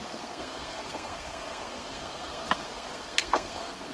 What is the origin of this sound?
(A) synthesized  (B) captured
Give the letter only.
A